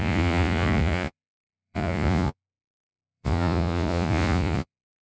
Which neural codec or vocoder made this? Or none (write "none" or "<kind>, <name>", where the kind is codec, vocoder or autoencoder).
vocoder, Vocos